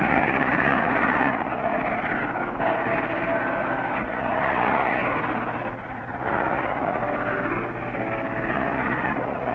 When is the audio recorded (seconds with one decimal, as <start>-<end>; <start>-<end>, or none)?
1.7-4.0; 5.0-5.8; 7.0-8.5